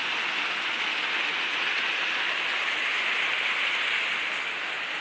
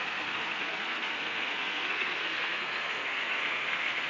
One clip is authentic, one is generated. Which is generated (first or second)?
second